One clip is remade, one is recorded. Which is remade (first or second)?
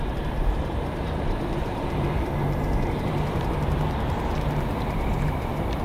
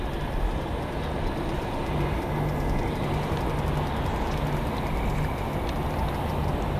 first